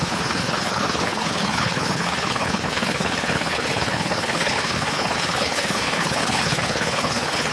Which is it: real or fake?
fake